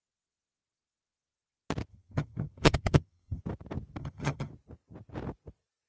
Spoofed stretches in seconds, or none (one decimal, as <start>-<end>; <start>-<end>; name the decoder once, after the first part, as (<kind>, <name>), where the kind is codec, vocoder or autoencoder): 1.9-3.4 (vocoder, HiFi-GAN); 4.0-4.5

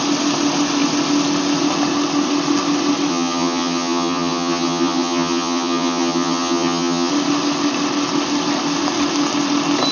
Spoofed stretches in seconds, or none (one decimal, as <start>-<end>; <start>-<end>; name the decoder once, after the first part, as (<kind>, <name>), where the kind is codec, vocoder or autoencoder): 3.1-7.1 (vocoder, HiFi-GAN)